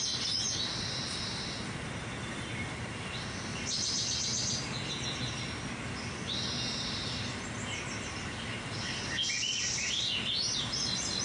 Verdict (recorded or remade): recorded